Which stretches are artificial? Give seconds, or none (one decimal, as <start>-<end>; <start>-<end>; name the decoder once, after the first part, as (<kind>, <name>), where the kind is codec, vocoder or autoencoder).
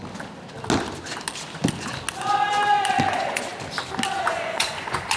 3.1-3.5 (vocoder, Vocos); 4.2-5.2